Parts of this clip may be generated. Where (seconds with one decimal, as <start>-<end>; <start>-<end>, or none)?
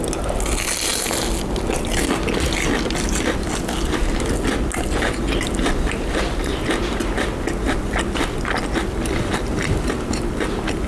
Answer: none